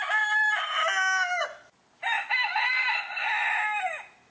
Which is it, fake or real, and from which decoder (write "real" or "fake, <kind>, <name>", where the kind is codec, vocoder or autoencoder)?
real